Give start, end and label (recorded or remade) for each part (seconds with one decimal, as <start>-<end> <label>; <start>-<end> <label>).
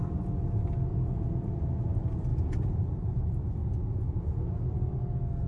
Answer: 0.0-0.9 recorded; 0.9-1.8 remade; 1.8-2.3 recorded; 2.3-2.8 remade; 2.8-3.6 recorded; 3.6-4.6 remade; 4.6-5.5 recorded